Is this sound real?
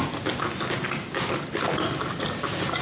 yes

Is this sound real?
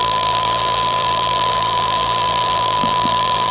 no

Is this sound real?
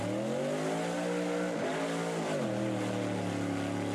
yes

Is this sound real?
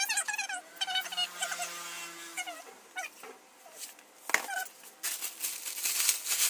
yes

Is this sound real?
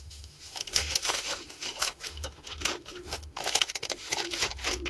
no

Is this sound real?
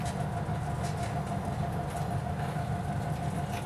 yes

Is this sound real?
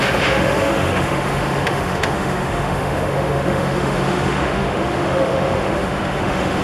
no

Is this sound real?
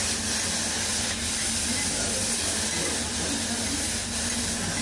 yes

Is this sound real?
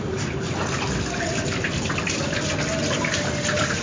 yes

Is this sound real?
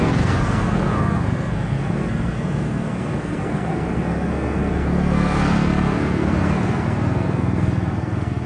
no